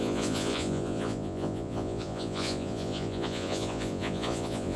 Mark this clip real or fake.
fake